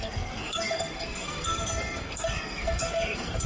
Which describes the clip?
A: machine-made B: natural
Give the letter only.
A